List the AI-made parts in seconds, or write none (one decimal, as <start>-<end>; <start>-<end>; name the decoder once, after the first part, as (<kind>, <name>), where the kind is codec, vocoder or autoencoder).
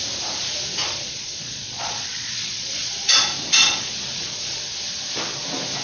0.8-3.2 (vocoder, Vocos); 3.6-4.6